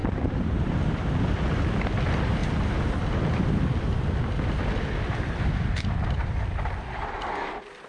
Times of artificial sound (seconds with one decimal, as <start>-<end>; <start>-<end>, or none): 0.0-0.8